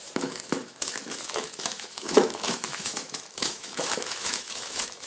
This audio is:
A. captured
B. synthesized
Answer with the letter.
B